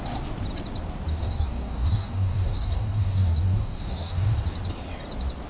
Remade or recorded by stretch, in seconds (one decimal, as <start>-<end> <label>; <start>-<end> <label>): 0.0-1.1 recorded; 1.1-4.4 remade; 4.4-5.5 recorded